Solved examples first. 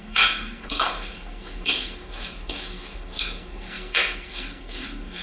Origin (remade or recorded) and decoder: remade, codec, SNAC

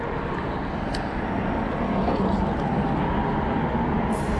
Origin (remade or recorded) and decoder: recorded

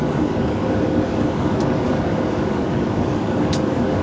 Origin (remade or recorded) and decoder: remade, codec, DAC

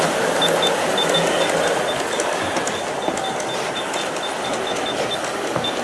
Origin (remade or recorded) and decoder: recorded